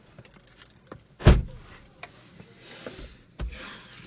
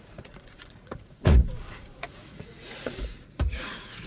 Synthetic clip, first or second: second